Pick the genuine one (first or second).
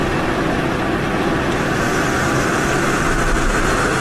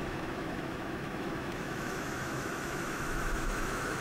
first